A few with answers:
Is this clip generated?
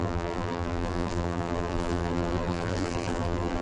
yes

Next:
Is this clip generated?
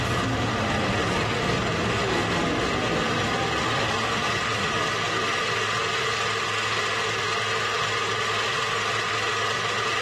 no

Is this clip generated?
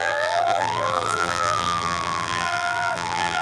yes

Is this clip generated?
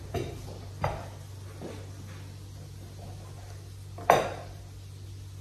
no